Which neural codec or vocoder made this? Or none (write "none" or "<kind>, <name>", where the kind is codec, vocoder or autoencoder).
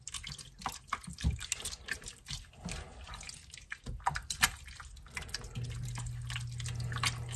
none